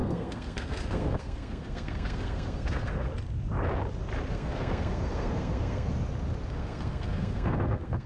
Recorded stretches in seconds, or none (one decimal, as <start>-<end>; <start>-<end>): 3.1-4.3; 5.9-6.5